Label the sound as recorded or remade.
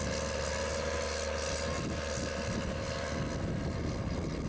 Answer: recorded